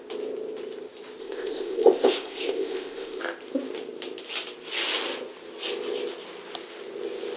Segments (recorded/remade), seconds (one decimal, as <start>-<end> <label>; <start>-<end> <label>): 0.0-1.2 recorded; 1.2-3.2 remade; 3.2-7.4 recorded